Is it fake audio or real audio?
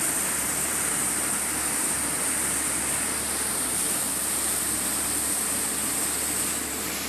real